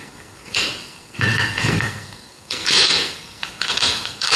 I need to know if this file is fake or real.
fake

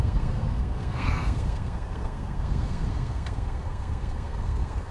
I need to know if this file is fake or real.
fake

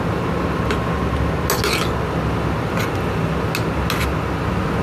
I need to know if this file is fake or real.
real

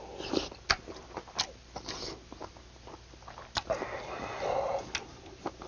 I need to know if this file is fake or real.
real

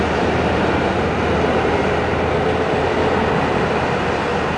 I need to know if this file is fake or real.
real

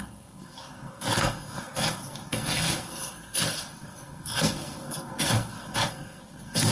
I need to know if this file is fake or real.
fake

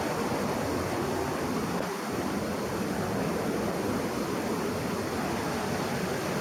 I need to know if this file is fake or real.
real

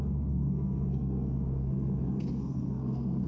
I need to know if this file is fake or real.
fake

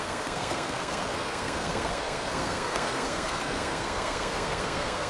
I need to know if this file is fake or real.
fake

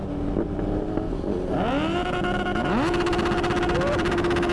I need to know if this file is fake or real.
real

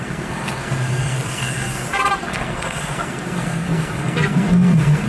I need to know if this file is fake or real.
fake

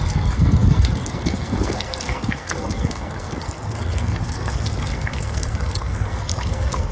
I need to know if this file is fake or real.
fake